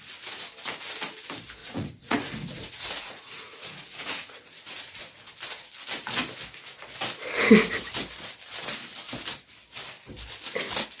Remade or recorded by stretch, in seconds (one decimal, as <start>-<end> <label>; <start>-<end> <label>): 0.0-1.6 recorded; 1.6-5.0 remade; 5.0-11.0 recorded